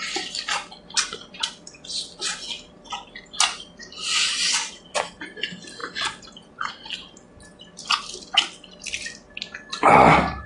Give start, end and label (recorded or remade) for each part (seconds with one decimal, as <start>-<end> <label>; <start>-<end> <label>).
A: 0.0-10.5 recorded